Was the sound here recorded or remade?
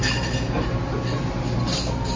recorded